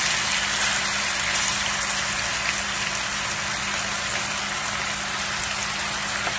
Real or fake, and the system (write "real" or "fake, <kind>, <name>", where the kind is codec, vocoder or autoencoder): real